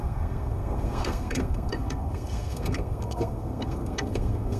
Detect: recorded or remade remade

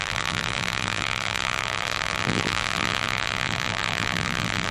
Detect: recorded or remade remade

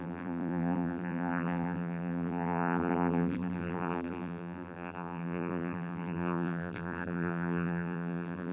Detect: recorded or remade remade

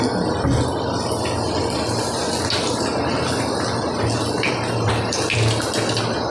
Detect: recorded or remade recorded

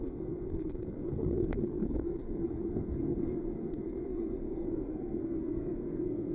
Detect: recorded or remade remade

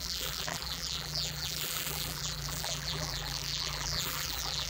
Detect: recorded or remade remade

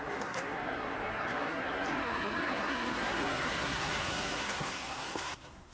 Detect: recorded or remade remade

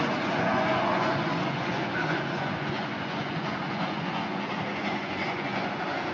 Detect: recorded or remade remade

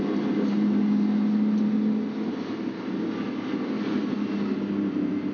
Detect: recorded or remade recorded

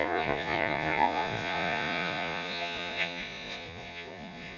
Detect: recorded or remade remade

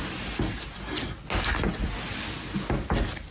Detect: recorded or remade recorded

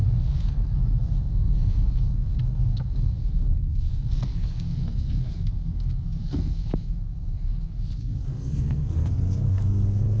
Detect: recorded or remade remade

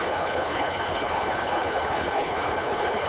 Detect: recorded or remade remade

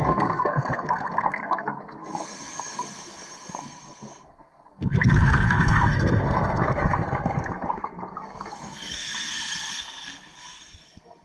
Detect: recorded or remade remade